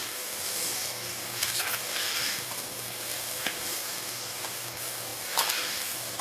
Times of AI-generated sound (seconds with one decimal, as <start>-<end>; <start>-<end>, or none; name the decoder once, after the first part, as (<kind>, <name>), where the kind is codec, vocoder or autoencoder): 0.0-6.2 (codec, DAC)